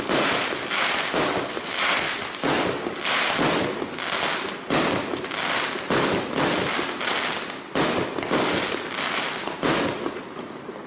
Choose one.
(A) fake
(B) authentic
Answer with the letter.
B